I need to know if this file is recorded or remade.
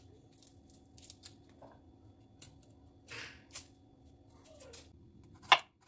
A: recorded